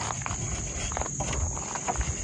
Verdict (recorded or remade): recorded